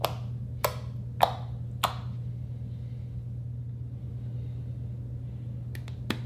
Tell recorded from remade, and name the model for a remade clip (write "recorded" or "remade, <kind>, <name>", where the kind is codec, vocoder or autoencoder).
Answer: recorded